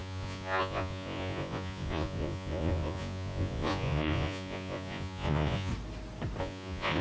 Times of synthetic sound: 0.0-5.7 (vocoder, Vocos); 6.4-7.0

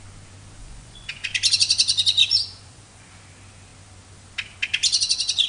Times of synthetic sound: 0.6-1.3 (vocoder, Vocos); 2.2-3.1

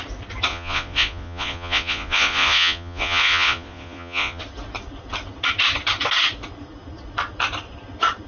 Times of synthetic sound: 0.5-4.4 (vocoder, Vocos)

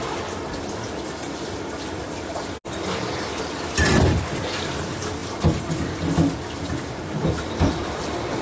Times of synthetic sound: none